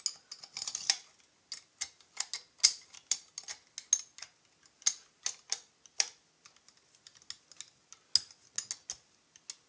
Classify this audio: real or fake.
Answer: real